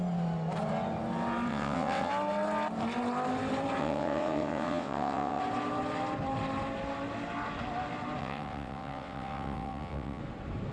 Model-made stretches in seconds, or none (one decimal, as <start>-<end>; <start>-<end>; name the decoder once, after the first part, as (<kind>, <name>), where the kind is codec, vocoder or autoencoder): 1.5-2.1 (vocoder, WaveNeXt); 3.8-5.4; 8.2-10.2

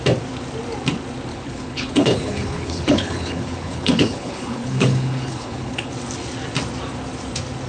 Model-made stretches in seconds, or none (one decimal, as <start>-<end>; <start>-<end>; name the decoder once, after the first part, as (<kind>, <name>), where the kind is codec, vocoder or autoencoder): 1.3-5.9 (codec, HILCodec)

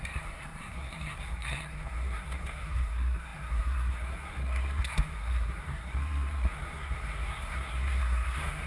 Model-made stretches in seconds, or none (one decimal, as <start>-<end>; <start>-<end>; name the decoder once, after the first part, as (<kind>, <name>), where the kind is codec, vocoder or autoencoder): 0.0-8.7 (codec, SNAC)

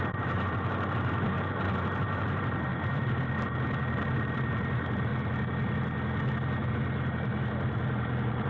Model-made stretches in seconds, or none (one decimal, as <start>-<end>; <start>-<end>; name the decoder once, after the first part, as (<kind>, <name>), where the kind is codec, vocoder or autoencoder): 0.0-5.1 (vocoder, BigVGAN v2); 6.6-8.5

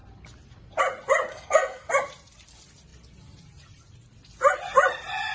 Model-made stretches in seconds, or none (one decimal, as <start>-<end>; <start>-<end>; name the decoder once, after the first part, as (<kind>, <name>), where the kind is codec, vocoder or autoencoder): 1.3-1.9 (codec, SNAC)

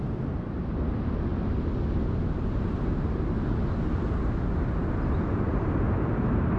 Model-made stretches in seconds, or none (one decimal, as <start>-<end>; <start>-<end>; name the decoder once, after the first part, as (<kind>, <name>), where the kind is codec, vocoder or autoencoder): none